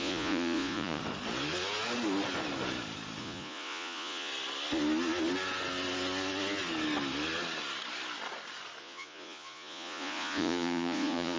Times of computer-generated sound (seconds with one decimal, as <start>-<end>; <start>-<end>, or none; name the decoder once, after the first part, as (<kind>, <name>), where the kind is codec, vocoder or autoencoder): 0.0-1.0 (vocoder, Vocos); 3.2-4.3; 8.8-11.4